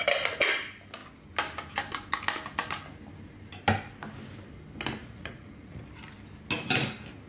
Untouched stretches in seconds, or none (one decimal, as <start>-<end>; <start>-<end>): 0.0-5.0; 5.8-7.3